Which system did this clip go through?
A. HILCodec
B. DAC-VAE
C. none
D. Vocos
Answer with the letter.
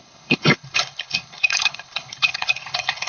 A